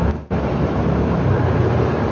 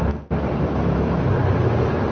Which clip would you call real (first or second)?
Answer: second